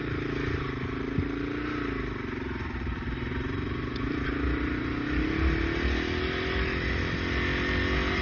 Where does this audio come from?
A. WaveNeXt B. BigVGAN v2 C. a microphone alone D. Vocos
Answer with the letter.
C